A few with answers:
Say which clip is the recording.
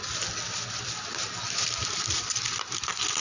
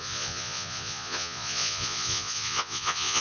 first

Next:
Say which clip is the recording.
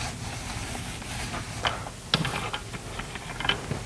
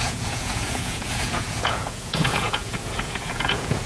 first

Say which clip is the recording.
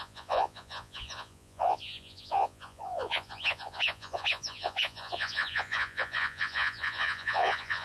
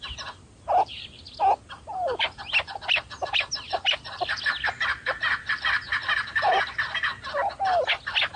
second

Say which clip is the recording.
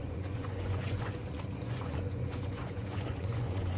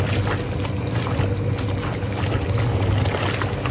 second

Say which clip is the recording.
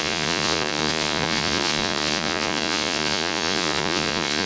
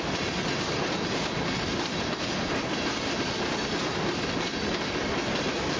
second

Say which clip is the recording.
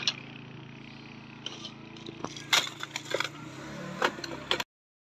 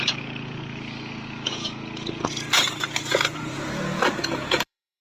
first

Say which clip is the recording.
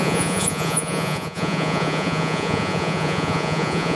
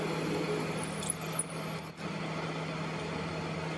second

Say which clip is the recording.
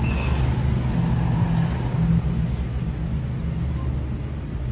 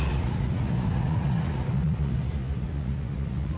first